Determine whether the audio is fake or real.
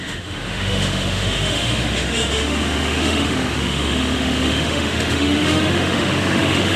fake